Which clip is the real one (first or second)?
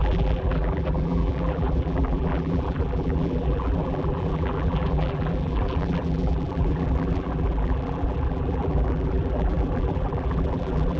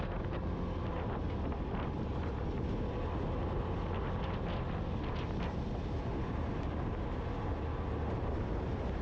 second